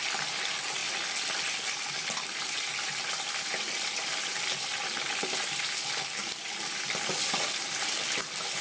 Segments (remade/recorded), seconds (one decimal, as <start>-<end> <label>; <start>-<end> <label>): 0.0-0.8 recorded; 0.8-4.4 remade; 4.4-8.6 recorded